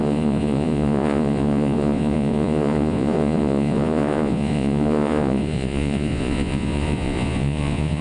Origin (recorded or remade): remade